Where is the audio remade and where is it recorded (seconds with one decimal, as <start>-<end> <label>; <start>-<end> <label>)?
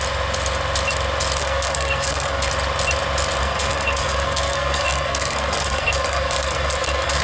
0.0-1.4 recorded; 1.4-2.5 remade; 2.5-3.4 recorded; 3.4-7.2 remade